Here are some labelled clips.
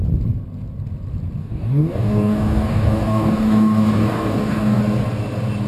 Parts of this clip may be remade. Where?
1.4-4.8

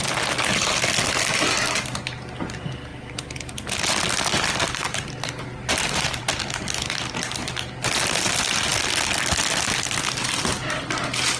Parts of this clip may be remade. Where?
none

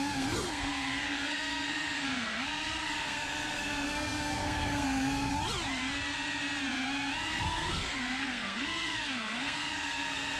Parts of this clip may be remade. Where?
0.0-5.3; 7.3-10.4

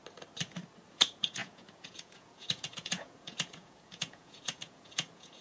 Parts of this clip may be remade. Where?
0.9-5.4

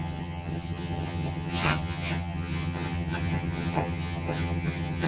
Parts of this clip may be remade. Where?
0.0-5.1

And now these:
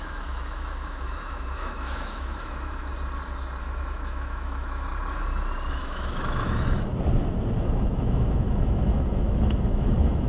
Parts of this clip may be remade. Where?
0.0-2.9; 3.6-4.9; 5.7-6.9; 7.6-10.3

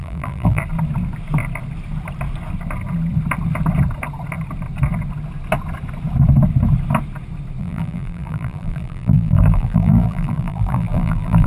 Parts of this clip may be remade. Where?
0.0-0.6; 7.6-11.5